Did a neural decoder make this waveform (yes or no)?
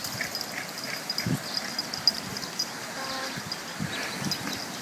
no